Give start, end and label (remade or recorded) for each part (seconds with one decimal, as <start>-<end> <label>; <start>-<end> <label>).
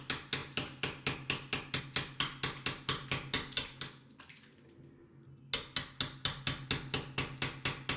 0.0-8.0 recorded